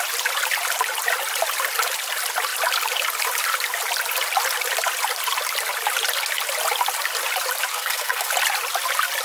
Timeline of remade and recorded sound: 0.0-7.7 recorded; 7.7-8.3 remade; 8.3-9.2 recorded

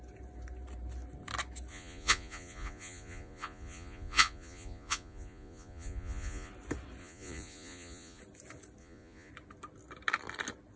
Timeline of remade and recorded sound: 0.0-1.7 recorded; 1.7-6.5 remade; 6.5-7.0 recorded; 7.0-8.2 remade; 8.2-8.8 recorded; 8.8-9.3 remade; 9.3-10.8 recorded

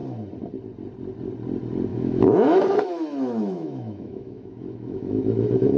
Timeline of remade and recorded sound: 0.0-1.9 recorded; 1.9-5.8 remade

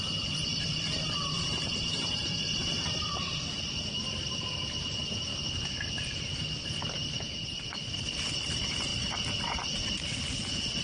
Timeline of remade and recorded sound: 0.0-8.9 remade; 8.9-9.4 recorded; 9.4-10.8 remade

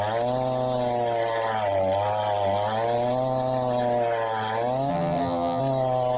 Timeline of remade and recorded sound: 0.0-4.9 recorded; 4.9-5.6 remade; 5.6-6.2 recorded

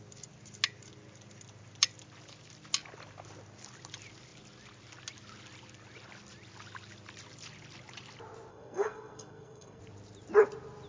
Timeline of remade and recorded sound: 0.0-8.5 recorded; 8.5-9.8 remade; 9.8-10.9 recorded

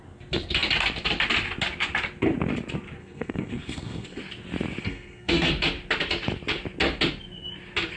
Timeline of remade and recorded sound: 0.0-3.0 recorded; 3.0-4.2 remade; 4.2-4.8 recorded; 4.8-5.5 remade; 5.5-8.0 recorded